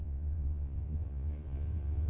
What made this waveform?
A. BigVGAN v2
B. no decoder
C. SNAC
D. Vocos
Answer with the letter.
D